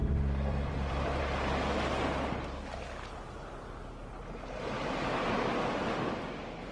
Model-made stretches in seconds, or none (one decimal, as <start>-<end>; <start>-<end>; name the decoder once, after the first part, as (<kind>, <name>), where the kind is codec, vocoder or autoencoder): 0.0-1.2 (vocoder, BigVGAN v2)